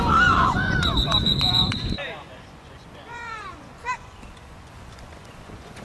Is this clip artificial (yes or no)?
yes